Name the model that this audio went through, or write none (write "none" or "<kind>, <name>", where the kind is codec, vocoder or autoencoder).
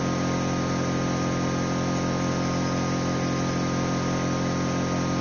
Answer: none